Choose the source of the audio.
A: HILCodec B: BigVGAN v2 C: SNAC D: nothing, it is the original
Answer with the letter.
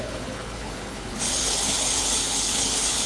A